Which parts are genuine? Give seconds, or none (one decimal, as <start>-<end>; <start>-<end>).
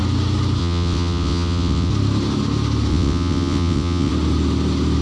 0.0-0.6; 1.9-2.9; 4.1-5.0